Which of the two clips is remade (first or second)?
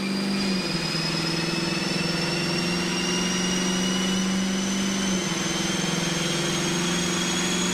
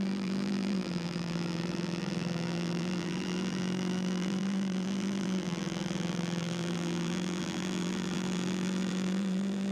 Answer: second